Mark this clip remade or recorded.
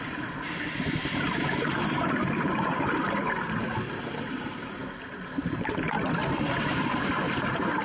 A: remade